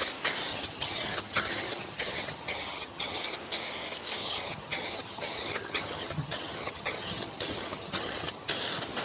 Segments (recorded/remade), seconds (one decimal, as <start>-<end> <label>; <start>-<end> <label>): 0.0-0.5 recorded; 0.5-3.2 remade; 3.2-4.2 recorded; 4.2-8.6 remade; 8.6-9.0 recorded